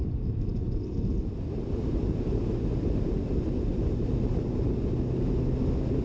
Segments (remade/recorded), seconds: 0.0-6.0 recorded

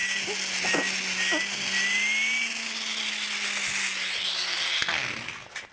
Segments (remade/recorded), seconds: 0.0-5.7 recorded

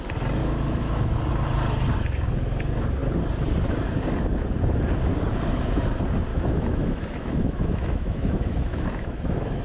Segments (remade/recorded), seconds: 0.0-0.4 recorded; 0.4-1.2 remade; 1.2-6.3 recorded; 6.3-9.6 remade

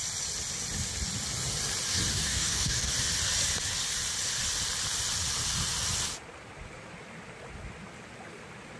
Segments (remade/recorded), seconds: 0.0-2.1 recorded; 2.1-2.9 remade; 2.9-8.8 recorded

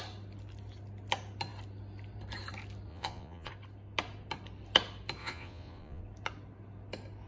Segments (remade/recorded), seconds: 0.0-2.9 recorded; 2.9-3.5 remade; 3.5-5.2 recorded; 5.2-6.0 remade; 6.0-7.3 recorded

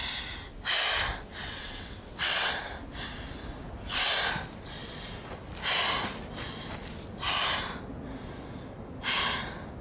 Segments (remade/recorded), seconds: 0.0-1.4 recorded; 1.4-2.6 remade; 2.6-9.8 recorded

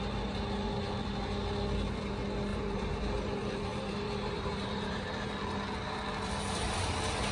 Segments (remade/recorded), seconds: 0.0-2.5 recorded; 2.5-5.3 remade; 5.3-7.3 recorded